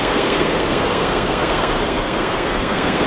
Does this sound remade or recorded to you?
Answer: remade